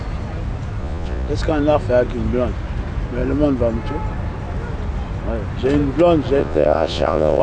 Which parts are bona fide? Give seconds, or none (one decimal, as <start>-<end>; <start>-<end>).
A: 0.0-0.8; 1.3-6.4